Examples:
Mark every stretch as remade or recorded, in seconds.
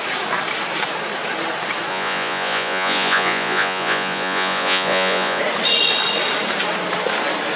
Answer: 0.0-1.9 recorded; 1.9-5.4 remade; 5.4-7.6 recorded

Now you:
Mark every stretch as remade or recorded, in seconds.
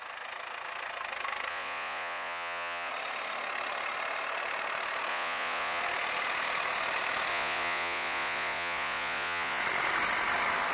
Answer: 0.0-1.5 recorded; 1.5-2.9 remade; 2.9-5.1 recorded; 5.1-5.8 remade; 5.8-7.3 recorded; 7.3-9.6 remade; 9.6-10.7 recorded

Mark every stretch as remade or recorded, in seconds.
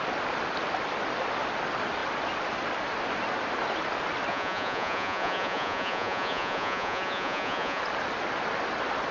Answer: 0.0-4.3 recorded; 4.3-7.8 remade; 7.8-9.1 recorded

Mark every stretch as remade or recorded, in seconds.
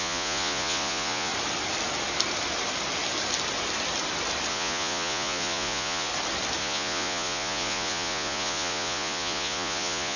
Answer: 0.0-1.3 remade; 1.3-4.5 recorded; 4.5-6.1 remade; 6.1-6.6 recorded; 6.6-10.2 remade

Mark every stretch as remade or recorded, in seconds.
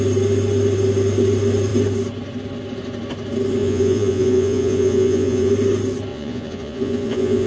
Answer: 0.0-3.6 recorded; 3.6-5.5 remade; 5.5-6.1 recorded; 6.1-7.5 remade